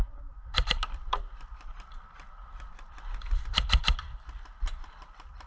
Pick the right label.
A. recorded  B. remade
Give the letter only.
A